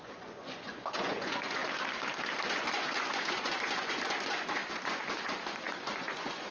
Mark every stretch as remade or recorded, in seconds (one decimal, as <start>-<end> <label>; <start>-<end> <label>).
0.0-1.6 remade; 1.6-2.5 recorded; 2.5-6.5 remade